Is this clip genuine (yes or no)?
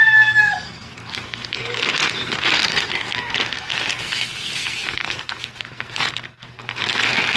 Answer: no